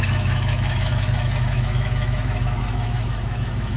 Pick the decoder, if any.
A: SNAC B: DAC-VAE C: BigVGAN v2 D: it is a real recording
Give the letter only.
B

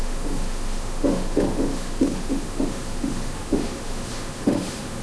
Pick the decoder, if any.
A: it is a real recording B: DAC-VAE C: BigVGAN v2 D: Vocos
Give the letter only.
B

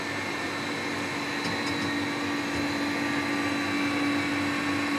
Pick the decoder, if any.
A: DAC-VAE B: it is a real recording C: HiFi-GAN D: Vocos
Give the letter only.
B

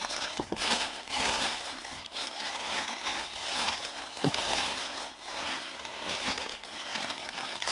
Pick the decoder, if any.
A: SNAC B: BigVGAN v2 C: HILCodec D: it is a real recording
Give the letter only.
A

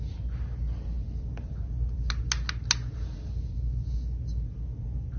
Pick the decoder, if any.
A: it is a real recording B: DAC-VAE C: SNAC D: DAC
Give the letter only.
A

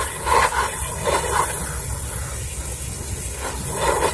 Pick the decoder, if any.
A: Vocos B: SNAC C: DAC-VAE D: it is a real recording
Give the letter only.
D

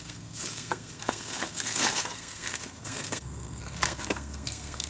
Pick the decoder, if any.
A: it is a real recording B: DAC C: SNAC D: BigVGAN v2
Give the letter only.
C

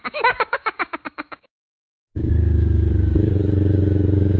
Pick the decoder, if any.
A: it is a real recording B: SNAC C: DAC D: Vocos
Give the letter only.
C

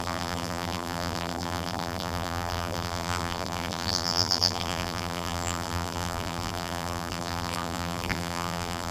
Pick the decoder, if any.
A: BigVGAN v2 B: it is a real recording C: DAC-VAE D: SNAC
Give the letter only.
A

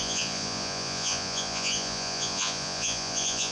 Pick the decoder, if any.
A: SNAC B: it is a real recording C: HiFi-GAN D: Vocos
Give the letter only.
D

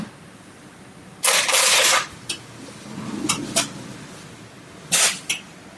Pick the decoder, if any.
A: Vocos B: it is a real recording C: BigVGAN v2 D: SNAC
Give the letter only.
B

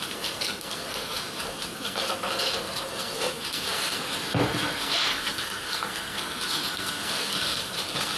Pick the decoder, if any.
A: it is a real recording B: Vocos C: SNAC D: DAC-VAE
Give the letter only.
C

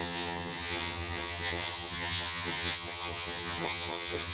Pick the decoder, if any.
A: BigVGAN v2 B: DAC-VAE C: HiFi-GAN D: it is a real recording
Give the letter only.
C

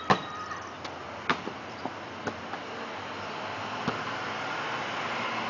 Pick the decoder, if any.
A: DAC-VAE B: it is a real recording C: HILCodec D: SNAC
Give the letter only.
B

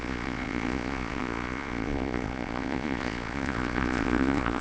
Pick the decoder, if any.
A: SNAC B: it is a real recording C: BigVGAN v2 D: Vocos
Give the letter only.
D